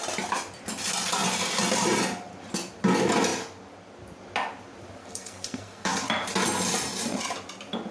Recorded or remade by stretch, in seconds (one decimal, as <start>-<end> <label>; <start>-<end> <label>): 0.0-5.0 recorded; 5.0-6.0 remade; 6.0-7.9 recorded